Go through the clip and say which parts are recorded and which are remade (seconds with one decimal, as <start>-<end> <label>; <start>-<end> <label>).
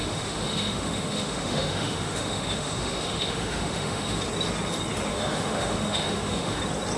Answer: 0.0-4.2 remade; 4.2-5.1 recorded; 5.1-6.6 remade; 6.6-7.0 recorded